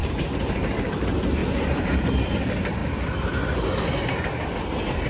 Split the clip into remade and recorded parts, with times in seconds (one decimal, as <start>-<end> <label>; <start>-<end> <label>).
0.0-0.8 remade; 0.8-1.4 recorded; 1.4-2.2 remade; 2.2-5.1 recorded